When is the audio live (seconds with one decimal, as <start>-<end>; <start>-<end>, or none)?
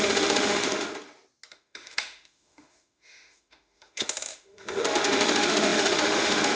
0.9-1.5